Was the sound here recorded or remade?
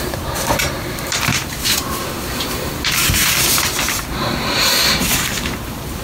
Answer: remade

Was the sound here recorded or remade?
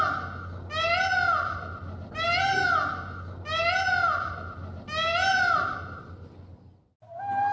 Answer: recorded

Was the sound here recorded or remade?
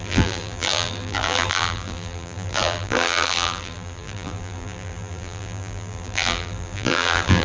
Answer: remade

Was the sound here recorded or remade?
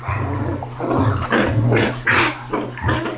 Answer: recorded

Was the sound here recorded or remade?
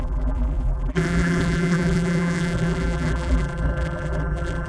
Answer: remade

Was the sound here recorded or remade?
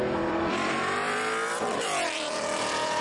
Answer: remade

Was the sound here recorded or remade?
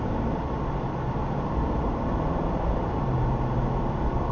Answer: remade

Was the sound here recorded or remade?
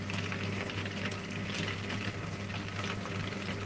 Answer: recorded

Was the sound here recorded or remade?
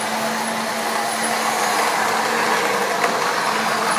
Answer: recorded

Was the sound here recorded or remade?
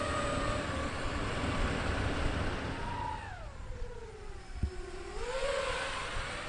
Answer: remade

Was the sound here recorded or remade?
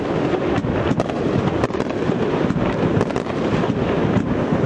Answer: recorded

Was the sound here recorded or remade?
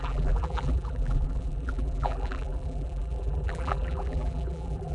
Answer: remade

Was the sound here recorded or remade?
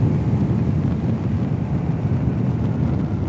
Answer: recorded